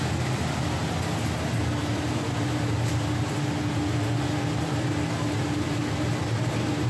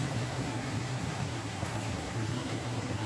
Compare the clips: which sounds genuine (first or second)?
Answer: first